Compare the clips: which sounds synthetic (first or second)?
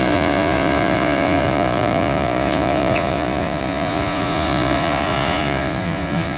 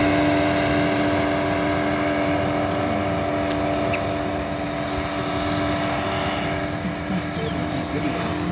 first